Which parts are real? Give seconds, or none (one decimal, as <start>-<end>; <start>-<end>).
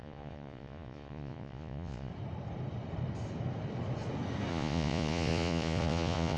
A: 2.1-4.5